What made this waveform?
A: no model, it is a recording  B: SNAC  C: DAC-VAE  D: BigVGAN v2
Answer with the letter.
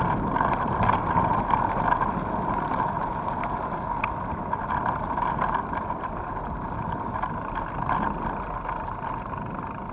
A